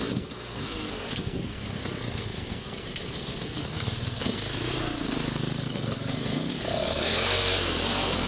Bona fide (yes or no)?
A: no